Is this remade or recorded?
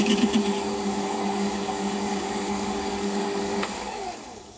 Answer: remade